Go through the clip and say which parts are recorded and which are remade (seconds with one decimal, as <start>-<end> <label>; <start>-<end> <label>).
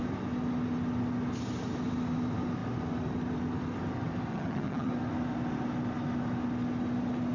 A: 0.0-4.3 recorded; 4.3-4.9 remade; 4.9-7.3 recorded